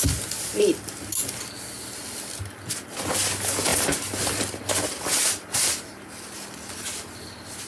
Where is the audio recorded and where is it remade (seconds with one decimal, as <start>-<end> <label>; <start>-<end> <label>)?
0.0-7.7 recorded